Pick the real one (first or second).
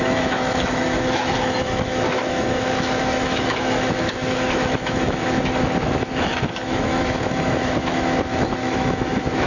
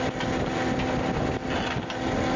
second